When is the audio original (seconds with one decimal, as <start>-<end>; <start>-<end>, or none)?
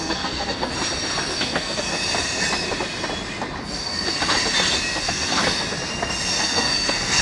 0.7-1.3; 1.9-3.6; 4.2-5.0; 5.4-6.4